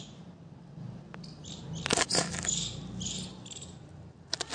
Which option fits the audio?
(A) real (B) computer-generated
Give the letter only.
A